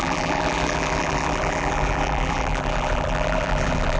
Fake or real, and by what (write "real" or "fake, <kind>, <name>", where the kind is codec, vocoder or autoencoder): fake, vocoder, BigVGAN v2